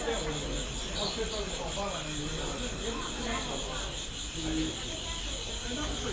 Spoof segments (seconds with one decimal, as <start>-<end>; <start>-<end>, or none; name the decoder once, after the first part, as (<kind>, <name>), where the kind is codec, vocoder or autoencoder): none